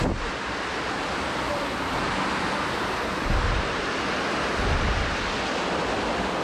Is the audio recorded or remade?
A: recorded